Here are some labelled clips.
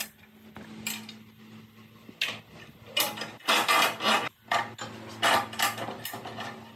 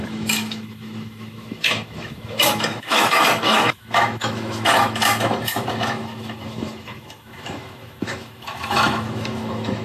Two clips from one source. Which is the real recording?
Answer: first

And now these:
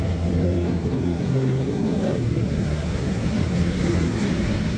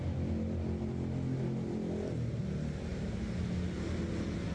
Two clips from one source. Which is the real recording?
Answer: second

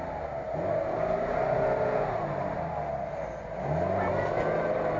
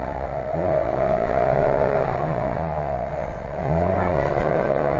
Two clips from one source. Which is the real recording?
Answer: first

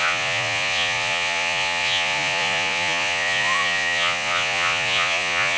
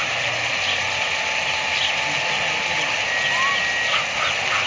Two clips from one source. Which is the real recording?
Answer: second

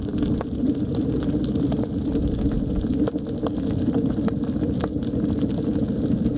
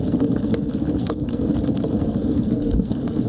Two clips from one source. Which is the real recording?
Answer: first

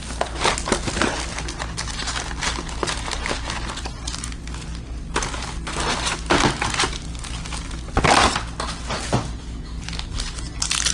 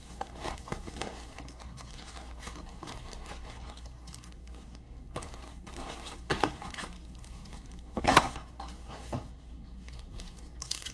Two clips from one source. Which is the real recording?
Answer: first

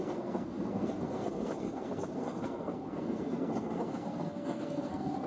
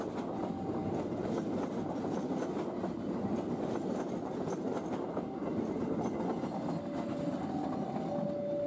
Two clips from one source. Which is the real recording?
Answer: second